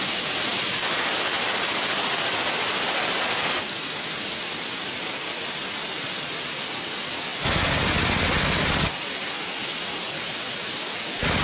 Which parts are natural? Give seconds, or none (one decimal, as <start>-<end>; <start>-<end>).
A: 0.0-11.4